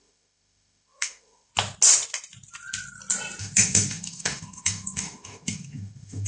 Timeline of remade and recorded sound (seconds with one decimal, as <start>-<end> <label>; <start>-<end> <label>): 0.0-1.5 remade; 1.5-3.4 recorded; 3.4-6.3 remade